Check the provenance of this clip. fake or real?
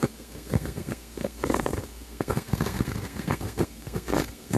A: fake